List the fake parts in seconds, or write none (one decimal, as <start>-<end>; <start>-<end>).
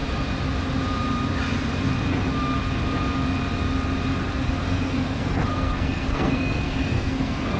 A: 4.6-7.6